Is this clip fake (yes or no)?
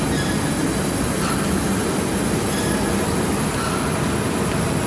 no